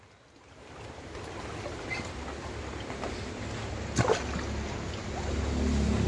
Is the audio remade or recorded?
recorded